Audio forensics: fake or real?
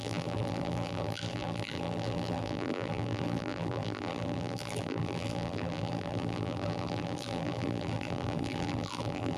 fake